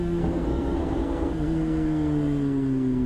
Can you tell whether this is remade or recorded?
remade